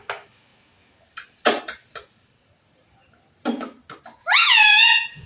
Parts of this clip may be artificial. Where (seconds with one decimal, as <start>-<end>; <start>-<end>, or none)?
4.2-5.3